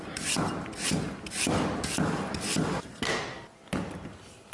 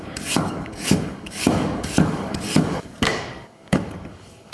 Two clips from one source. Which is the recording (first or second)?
first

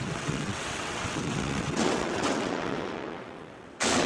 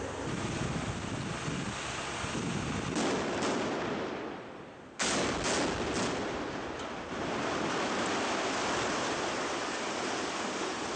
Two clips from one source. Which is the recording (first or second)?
second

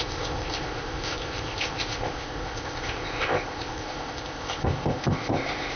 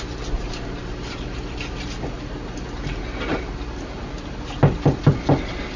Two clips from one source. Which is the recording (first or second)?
second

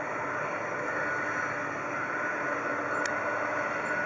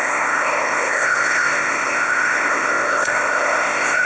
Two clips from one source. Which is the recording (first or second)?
first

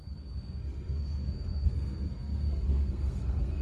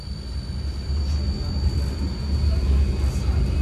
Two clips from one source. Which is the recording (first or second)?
second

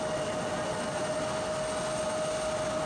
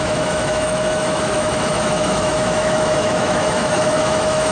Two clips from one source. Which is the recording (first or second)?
first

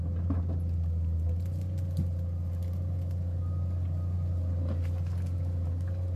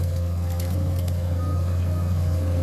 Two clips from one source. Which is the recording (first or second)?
first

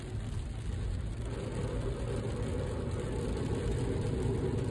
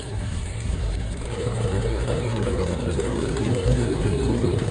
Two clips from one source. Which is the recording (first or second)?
first